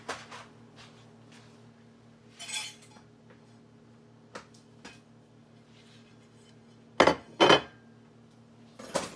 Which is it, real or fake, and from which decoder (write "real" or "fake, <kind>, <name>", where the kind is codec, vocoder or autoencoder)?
real